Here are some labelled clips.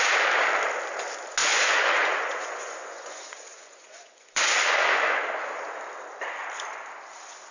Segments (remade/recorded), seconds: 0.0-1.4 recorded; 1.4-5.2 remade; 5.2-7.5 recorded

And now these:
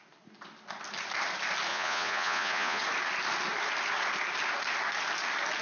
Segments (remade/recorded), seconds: 0.0-1.7 recorded; 1.7-2.8 remade; 2.8-5.6 recorded

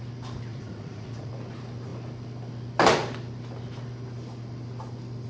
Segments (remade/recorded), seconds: 0.0-0.5 recorded; 0.5-1.3 remade; 1.3-5.3 recorded

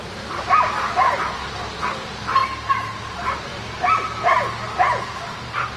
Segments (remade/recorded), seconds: 0.0-5.8 recorded

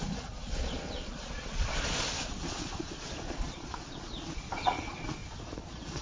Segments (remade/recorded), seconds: 0.0-6.0 remade

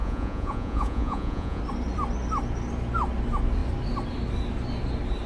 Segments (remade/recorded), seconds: 0.0-1.6 remade; 1.6-5.3 recorded